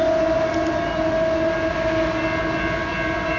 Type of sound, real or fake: real